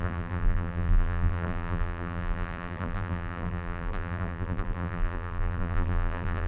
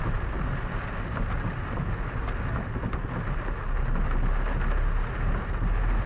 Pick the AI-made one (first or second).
first